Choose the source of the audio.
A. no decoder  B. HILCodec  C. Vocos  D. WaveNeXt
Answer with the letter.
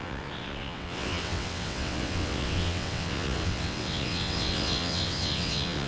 D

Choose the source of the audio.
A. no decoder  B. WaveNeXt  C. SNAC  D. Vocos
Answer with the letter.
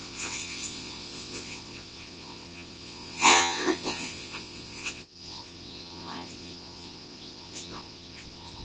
B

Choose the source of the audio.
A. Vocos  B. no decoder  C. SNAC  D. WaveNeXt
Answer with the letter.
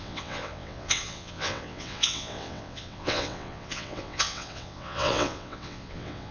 D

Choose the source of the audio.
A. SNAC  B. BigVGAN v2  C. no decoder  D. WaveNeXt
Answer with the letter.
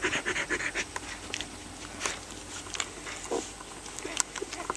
C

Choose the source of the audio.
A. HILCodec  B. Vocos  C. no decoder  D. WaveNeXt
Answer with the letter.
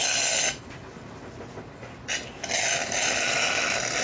C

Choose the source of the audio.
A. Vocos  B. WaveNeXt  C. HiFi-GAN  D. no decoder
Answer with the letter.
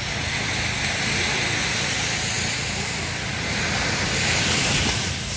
D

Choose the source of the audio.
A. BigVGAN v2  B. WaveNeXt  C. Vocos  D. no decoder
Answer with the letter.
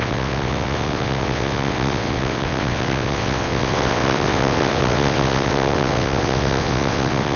B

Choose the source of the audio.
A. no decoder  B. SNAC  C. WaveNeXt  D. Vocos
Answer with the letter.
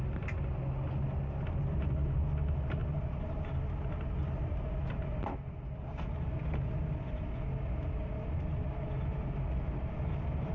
A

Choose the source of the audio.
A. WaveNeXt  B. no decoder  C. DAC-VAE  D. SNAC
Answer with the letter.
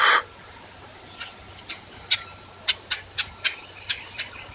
B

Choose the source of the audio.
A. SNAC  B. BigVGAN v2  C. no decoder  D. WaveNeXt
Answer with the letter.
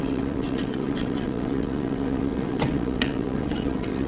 D